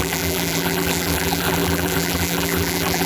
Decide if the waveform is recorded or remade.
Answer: remade